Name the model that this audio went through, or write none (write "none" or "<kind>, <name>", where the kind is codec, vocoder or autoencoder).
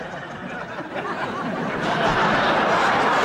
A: none